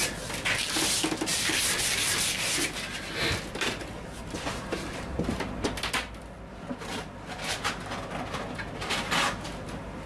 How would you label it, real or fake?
real